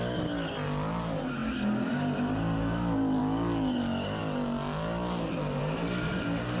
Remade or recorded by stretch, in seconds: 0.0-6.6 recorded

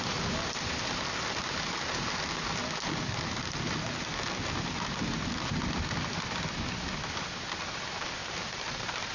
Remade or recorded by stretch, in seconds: 0.0-8.2 recorded; 8.2-9.1 remade

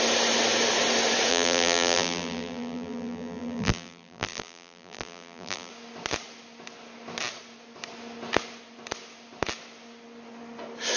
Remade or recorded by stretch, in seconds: 0.0-1.3 recorded; 1.3-5.7 remade; 5.7-11.0 recorded